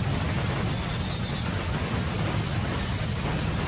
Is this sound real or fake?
real